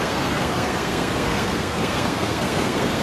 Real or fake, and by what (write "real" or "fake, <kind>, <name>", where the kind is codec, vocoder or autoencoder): fake, codec, SNAC